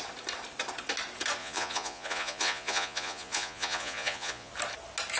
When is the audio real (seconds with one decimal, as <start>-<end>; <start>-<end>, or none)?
0.0-1.4; 4.5-5.2